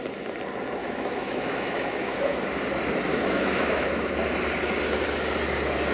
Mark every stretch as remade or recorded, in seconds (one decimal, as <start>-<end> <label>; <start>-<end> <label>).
0.0-0.8 recorded; 0.8-2.4 remade; 2.4-3.1 recorded; 3.1-4.1 remade; 4.1-5.9 recorded